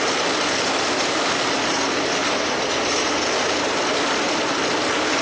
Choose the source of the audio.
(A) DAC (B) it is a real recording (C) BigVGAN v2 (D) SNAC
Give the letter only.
B